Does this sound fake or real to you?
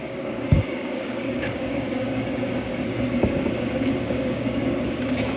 fake